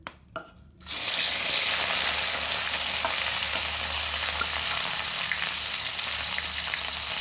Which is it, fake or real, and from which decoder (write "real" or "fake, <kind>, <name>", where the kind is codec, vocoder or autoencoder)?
real